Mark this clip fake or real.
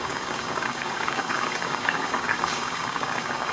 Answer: fake